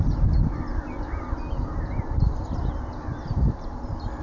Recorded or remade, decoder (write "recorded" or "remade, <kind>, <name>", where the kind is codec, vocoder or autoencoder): recorded